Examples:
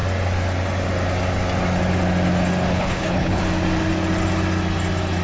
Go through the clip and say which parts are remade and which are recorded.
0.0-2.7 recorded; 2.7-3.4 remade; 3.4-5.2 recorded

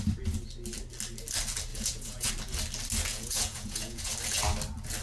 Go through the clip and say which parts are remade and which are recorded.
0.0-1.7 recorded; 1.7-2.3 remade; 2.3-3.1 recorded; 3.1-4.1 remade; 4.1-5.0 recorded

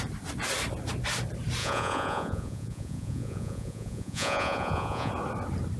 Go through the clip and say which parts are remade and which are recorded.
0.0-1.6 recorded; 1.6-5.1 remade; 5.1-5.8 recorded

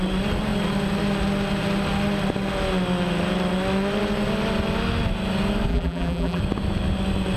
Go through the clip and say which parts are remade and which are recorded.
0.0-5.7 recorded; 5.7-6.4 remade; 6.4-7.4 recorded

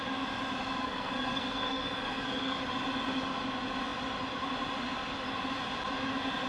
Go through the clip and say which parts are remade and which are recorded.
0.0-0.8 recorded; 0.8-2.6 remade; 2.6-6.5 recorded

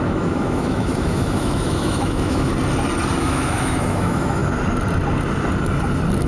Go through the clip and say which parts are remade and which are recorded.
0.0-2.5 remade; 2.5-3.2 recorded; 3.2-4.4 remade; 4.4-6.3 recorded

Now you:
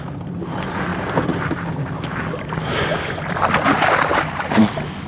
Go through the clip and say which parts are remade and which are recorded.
0.0-4.1 recorded; 4.1-4.6 remade; 4.6-5.1 recorded

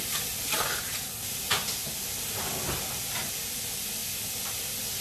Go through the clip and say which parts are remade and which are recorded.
0.0-5.0 recorded